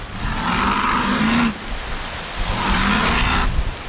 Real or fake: real